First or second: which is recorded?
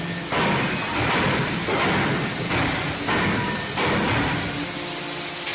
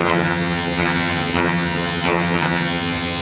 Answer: first